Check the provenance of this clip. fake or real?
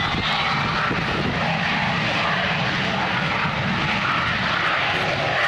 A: real